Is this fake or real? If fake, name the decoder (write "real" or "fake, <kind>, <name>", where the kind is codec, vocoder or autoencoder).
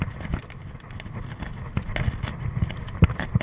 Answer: real